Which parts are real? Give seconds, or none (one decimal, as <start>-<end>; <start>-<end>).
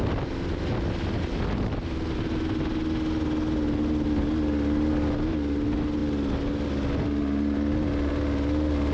0.0-8.9